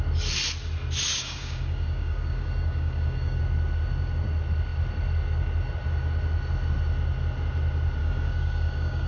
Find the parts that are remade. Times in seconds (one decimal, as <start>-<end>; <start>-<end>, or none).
1.1-3.4; 8.0-9.1